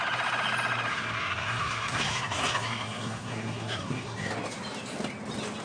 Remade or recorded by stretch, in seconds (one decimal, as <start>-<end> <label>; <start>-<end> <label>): 0.0-0.9 recorded; 0.9-4.3 remade; 4.3-5.6 recorded